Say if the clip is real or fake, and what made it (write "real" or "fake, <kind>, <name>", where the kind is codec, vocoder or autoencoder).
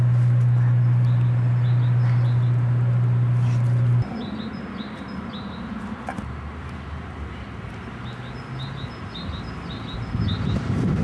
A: real